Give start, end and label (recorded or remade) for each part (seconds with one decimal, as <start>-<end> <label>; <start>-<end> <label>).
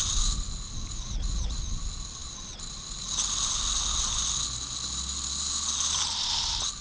0.0-0.9 recorded; 0.9-1.6 remade; 1.6-6.8 recorded